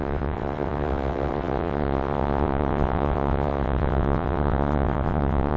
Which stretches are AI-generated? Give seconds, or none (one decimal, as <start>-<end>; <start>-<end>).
0.0-5.6